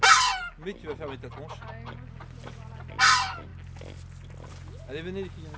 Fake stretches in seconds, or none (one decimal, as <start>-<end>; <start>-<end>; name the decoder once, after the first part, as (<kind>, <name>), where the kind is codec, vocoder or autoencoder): none